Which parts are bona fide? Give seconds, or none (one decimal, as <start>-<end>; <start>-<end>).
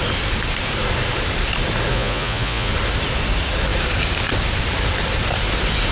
0.0-1.9; 2.7-5.9